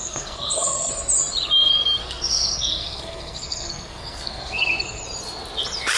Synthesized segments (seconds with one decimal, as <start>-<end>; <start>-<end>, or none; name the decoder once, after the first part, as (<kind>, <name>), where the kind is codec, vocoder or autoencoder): 0.0-0.9 (codec, SNAC); 2.0-5.0